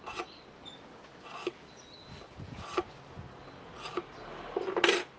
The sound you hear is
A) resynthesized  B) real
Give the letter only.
B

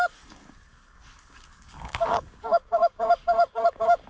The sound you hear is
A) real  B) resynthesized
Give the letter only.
B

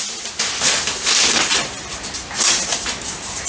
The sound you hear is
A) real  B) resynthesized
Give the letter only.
A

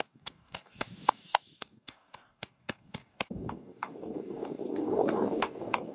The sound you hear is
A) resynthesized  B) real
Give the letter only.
A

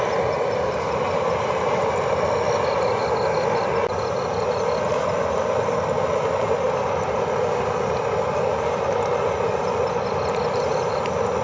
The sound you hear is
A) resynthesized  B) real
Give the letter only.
B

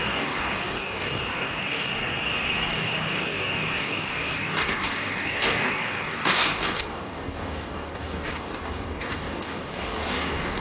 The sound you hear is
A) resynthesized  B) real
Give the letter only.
A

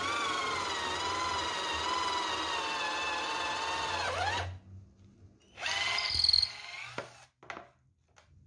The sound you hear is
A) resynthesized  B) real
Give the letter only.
B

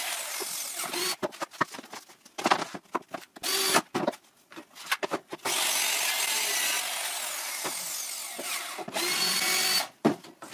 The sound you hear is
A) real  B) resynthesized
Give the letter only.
A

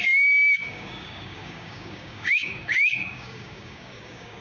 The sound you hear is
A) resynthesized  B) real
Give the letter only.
A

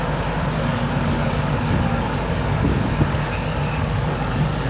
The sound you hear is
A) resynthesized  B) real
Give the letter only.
A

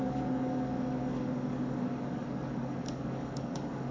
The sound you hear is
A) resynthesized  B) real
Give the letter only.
A